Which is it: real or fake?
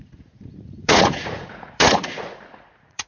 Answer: fake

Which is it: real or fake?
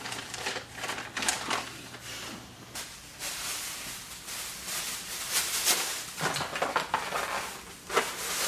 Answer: real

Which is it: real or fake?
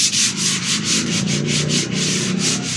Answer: real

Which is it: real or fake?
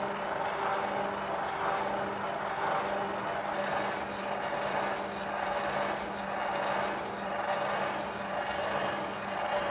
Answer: real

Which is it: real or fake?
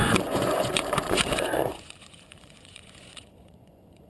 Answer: fake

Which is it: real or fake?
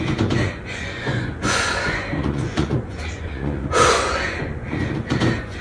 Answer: fake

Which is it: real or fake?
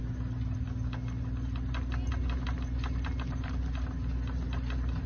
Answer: real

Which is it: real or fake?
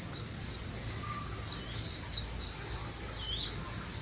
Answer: real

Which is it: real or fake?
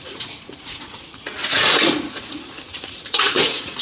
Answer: fake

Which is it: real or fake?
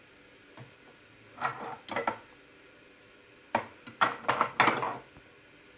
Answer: real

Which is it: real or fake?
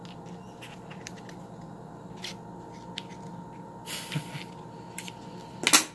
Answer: real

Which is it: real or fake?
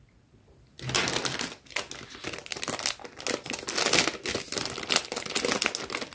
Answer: real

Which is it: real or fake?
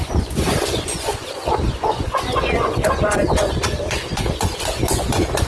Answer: fake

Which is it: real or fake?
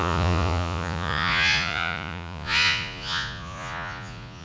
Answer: fake